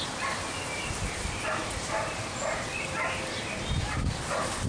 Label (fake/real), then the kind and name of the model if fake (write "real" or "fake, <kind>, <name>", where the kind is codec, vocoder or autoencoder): fake, vocoder, BigVGAN v2